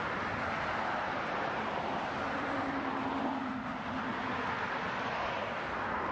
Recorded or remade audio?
recorded